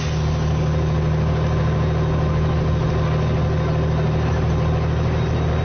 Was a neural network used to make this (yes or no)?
no